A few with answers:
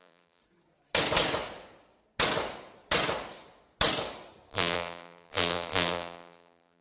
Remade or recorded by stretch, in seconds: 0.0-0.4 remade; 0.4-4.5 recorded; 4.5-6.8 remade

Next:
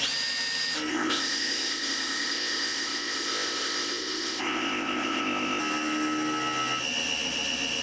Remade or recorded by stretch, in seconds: 0.0-0.9 recorded; 0.9-5.6 remade; 5.6-7.8 recorded

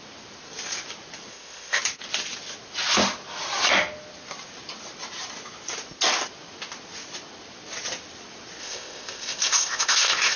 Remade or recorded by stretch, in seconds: 0.0-1.3 recorded; 1.3-1.8 remade; 1.8-8.6 recorded; 8.6-10.4 remade